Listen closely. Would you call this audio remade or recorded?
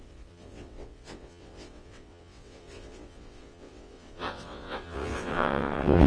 remade